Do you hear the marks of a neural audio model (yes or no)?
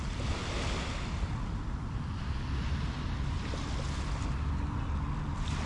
no